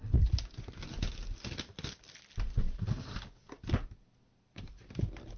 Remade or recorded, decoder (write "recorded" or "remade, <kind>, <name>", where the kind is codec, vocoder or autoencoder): recorded